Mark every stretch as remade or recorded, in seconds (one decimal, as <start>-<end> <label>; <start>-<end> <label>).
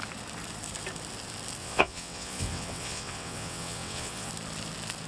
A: 0.0-1.6 recorded; 1.6-4.3 remade; 4.3-5.1 recorded